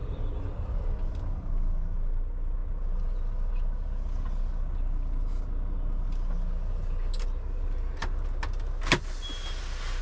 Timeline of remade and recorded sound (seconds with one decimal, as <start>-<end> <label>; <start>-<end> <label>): 0.0-10.0 recorded